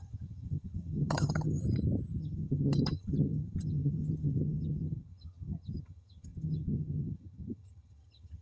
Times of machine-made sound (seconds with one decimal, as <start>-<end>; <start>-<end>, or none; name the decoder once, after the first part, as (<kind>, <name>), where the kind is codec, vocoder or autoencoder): 0.0-1.6 (vocoder, HiFi-GAN); 2.2-8.4